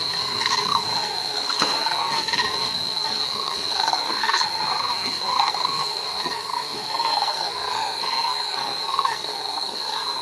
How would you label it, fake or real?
fake